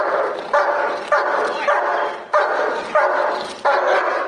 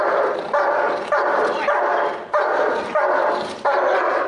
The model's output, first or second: second